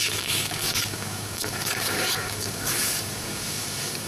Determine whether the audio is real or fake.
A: fake